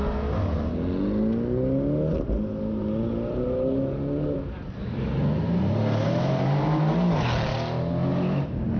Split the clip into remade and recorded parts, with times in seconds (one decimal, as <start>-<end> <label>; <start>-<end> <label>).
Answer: 0.0-8.8 recorded